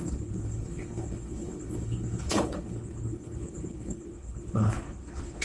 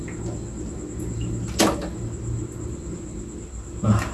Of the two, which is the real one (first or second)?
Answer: second